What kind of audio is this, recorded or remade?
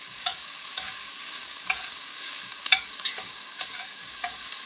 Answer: remade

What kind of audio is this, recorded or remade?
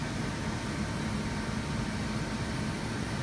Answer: recorded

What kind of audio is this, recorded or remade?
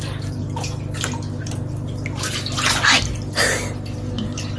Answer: recorded